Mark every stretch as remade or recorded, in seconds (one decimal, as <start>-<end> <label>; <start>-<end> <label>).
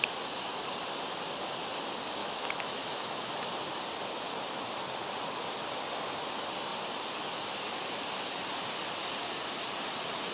0.0-2.2 recorded; 2.2-3.3 remade; 3.3-10.3 recorded